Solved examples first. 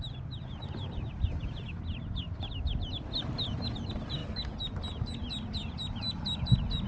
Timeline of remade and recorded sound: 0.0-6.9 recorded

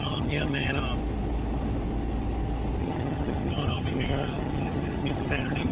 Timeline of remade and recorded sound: 0.0-0.8 remade; 0.8-2.8 recorded; 2.8-5.7 remade